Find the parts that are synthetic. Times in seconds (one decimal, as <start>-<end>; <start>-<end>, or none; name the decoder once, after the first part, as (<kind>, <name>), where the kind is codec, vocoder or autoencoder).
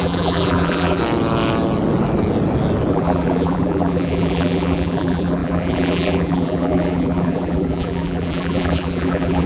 0.0-1.0 (vocoder, BigVGAN v2); 2.9-9.5